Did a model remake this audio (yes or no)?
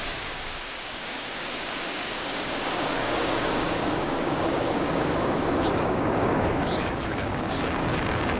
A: yes